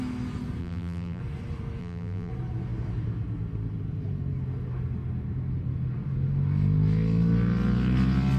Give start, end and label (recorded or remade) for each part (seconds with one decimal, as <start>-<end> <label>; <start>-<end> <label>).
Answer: 0.0-0.6 recorded; 0.6-1.2 remade; 1.2-1.8 recorded; 1.8-2.3 remade; 2.3-8.4 recorded